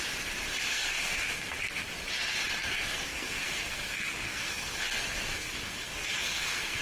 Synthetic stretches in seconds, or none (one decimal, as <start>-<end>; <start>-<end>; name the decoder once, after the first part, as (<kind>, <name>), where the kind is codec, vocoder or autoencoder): 0.7-1.8 (codec, SNAC); 2.6-6.8